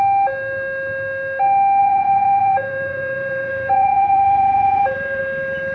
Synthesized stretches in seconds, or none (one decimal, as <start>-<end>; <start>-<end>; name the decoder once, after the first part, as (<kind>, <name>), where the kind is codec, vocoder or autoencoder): 1.8-5.2 (vocoder, Vocos)